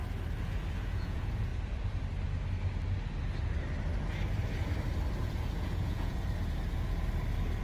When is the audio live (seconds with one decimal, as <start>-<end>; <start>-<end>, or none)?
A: 0.0-0.7; 1.5-5.2; 6.3-7.6

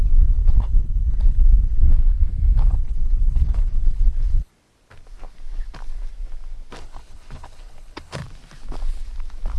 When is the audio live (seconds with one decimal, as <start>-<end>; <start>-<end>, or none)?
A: 1.8-2.7; 4.5-6.8; 8.2-9.6

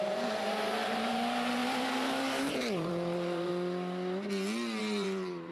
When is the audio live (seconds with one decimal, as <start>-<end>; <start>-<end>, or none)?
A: 3.5-4.8

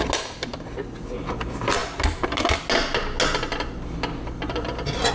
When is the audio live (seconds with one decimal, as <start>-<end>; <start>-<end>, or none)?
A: 0.0-5.1

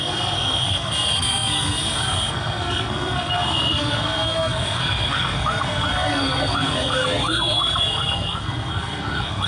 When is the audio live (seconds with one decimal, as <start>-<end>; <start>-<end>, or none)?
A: none

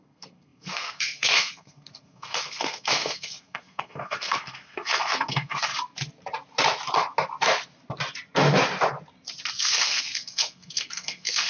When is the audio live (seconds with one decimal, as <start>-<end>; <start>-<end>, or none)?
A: 5.7-9.5

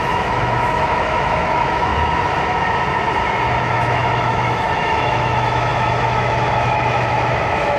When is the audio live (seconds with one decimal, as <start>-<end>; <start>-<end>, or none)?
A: 1.9-3.6